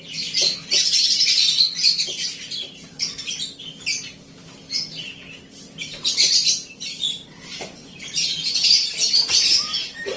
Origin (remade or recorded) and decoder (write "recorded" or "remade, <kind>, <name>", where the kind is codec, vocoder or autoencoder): remade, vocoder, BigVGAN v2